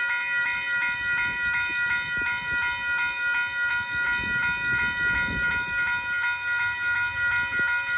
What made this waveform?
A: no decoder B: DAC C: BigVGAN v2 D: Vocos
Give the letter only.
A